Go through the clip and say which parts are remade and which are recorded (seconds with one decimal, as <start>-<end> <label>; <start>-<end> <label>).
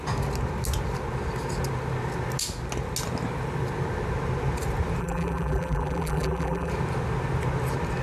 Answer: 0.0-5.0 recorded; 5.0-6.7 remade; 6.7-8.0 recorded